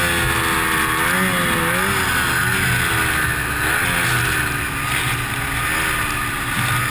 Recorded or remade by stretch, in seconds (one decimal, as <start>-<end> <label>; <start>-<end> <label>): 0.0-6.9 recorded